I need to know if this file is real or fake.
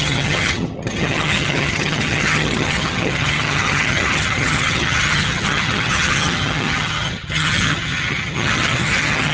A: fake